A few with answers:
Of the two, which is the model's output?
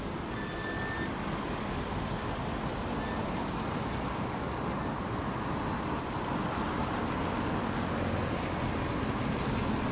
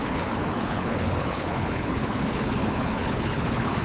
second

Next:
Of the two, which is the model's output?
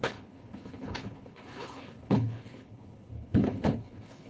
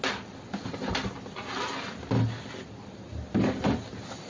first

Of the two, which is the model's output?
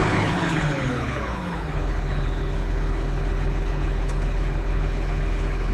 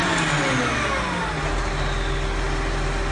first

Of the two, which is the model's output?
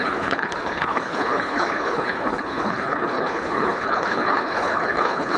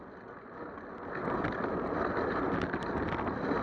first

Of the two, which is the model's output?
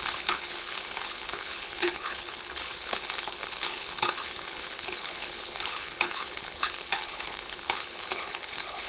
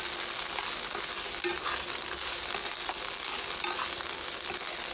first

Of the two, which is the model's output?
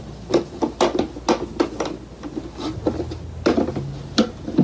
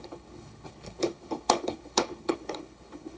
second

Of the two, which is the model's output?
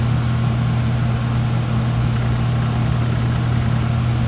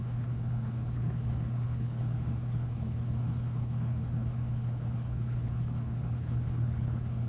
second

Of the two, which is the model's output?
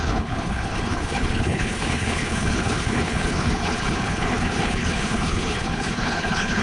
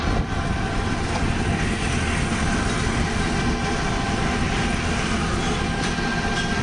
first